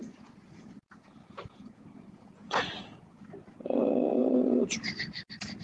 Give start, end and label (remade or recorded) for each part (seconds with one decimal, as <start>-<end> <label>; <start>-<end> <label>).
0.0-3.0 remade; 3.0-4.1 recorded; 4.1-4.6 remade; 4.6-5.6 recorded